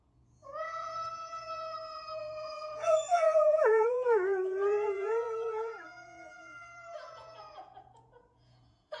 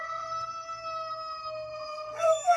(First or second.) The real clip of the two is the second